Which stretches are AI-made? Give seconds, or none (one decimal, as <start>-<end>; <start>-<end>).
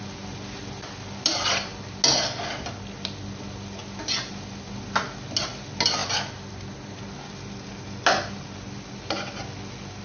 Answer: 6.0-6.9